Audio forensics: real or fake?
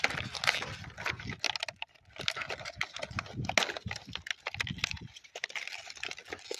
real